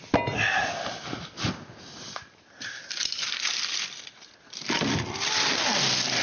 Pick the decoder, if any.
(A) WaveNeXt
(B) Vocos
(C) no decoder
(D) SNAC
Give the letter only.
C